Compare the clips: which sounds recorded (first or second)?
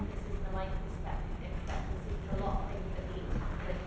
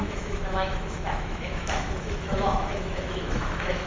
first